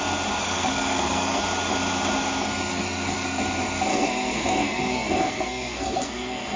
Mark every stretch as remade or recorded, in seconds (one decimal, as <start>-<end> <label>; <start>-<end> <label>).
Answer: 0.0-0.4 recorded; 0.4-1.4 remade; 1.4-2.7 recorded; 2.7-3.4 remade; 3.4-3.9 recorded; 3.9-6.6 remade